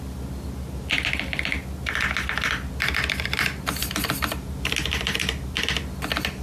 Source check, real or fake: real